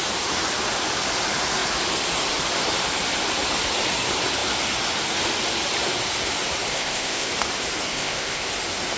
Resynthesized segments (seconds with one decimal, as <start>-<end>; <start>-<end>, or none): 6.7-7.3; 7.9-8.5